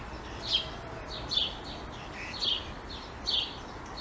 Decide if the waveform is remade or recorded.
recorded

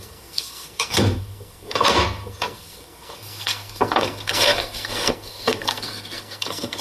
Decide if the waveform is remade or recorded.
remade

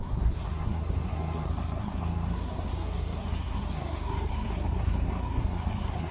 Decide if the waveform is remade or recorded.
remade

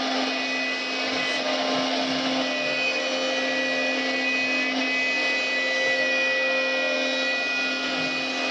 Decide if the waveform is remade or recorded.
recorded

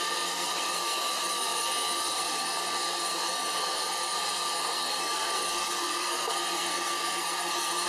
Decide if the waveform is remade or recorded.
remade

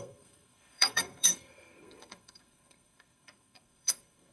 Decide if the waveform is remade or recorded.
remade